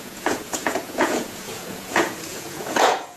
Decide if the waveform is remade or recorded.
remade